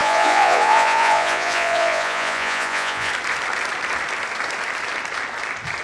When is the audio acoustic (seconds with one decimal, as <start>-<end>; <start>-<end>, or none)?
3.1-5.8